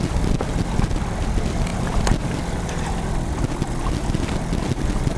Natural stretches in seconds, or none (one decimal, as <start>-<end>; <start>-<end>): 0.0-5.2